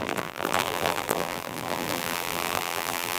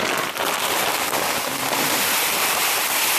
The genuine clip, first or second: second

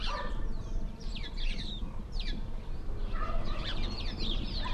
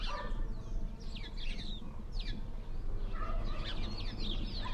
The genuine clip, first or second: second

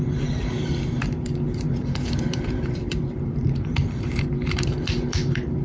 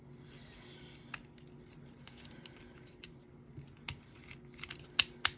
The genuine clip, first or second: second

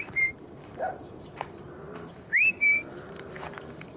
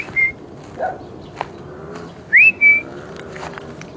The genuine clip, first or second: second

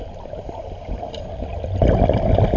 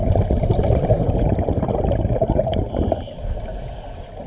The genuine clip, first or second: first